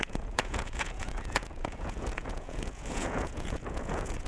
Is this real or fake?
fake